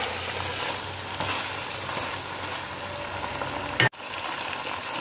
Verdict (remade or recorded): recorded